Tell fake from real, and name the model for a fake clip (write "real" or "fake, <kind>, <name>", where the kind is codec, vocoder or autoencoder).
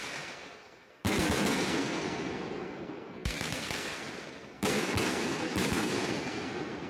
fake, codec, SNAC